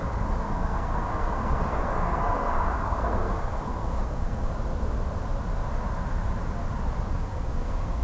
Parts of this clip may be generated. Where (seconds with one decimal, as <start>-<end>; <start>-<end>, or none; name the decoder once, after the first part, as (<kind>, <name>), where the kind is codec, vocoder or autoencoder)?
0.0-4.5 (codec, SNAC); 7.1-8.0

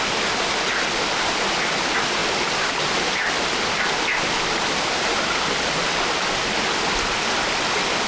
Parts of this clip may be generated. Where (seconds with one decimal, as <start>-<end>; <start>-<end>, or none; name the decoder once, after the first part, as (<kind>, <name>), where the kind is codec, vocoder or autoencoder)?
none

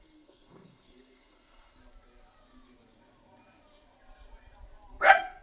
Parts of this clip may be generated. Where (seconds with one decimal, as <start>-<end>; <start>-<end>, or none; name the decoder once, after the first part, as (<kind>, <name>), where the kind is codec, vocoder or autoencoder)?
0.0-1.8 (codec, SNAC); 5.0-5.4

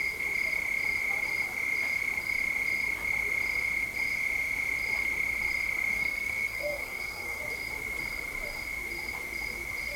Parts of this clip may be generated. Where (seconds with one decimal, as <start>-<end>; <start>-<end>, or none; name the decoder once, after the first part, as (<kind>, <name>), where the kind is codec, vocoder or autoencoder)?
5.9-7.4 (codec, SNAC)